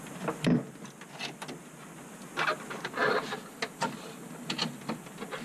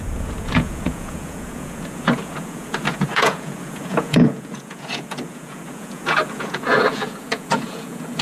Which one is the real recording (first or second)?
first